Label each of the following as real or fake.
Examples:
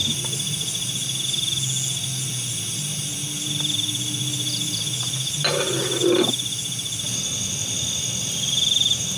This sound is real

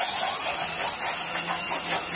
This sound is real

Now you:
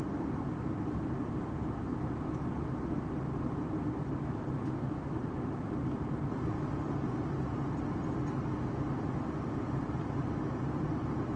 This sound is real